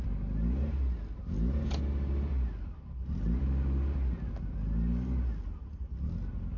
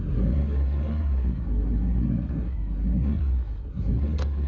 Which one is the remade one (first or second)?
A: second